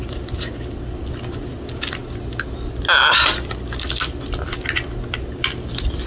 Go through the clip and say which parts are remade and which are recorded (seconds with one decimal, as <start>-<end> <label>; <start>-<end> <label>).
0.0-6.1 recorded

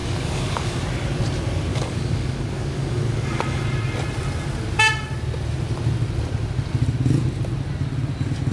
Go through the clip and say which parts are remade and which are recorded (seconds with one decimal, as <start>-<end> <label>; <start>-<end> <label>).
0.0-0.8 remade; 0.8-1.7 recorded; 1.7-3.6 remade; 3.6-8.5 recorded

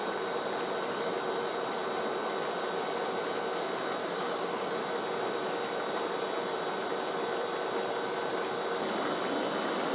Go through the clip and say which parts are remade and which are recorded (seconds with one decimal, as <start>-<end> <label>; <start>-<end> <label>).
0.0-4.0 recorded; 4.0-4.8 remade; 4.8-9.9 recorded

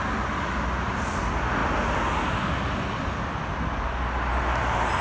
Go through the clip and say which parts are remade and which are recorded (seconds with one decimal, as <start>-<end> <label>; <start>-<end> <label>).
0.0-5.0 recorded